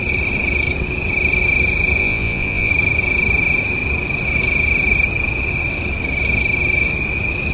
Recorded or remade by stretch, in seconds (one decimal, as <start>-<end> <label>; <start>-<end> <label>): 0.0-2.0 recorded; 2.0-2.7 remade; 2.7-7.5 recorded